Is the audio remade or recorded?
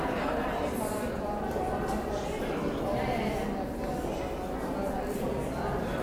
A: recorded